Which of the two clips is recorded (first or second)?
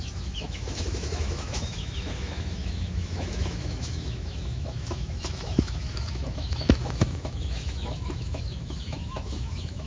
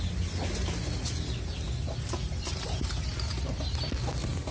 second